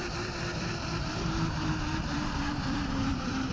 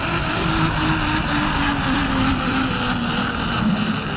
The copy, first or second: first